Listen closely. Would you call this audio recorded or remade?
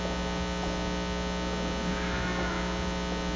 recorded